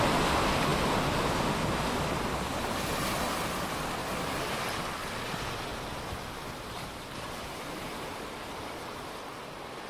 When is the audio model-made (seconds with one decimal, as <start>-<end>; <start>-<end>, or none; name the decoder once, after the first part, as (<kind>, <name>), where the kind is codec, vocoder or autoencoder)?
4.0-4.8 (vocoder, BigVGAN v2); 5.7-8.5